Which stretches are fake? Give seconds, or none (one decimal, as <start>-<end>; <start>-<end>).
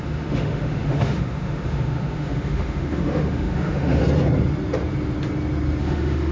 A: 0.0-4.0; 5.8-6.3